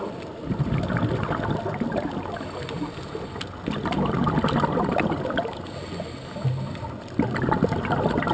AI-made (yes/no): no